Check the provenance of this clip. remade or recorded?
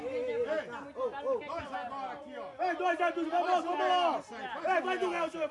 recorded